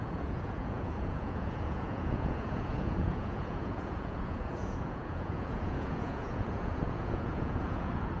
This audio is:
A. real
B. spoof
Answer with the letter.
B